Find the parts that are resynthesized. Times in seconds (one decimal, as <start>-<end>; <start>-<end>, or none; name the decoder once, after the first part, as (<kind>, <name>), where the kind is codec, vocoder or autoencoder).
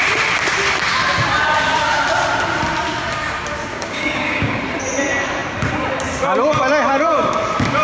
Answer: 3.7-4.6 (codec, DAC)